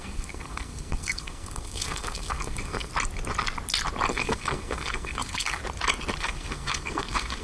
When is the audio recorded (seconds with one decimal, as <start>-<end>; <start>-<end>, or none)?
2.9-4.1; 5.6-6.2